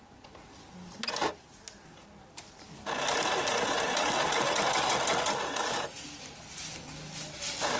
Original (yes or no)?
yes